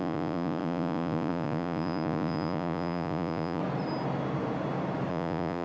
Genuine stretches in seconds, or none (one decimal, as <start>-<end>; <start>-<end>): 3.6-5.1